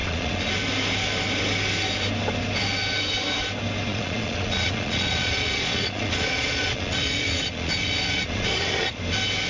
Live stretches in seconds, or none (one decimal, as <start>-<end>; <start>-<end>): 0.5-3.9; 9.0-9.5